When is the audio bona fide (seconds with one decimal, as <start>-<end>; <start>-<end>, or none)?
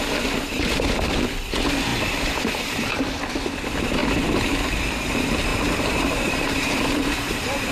0.0-1.9; 3.3-5.5